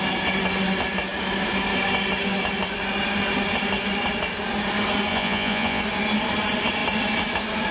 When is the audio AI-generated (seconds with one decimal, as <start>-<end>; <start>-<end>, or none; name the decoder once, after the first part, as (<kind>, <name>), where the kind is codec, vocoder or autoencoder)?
5.1-5.8 (vocoder, Vocos)